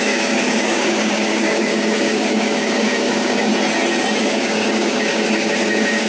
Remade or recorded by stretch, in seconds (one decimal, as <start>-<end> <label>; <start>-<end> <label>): 0.0-3.5 remade; 3.5-4.2 recorded; 4.2-6.1 remade